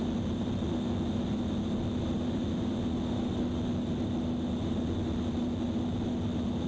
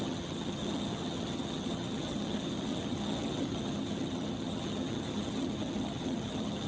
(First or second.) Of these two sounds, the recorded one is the first